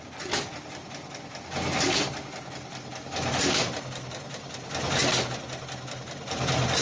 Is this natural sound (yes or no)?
yes